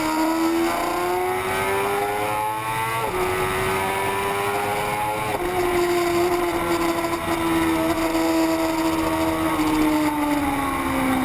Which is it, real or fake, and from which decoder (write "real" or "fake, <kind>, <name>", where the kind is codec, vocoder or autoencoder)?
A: real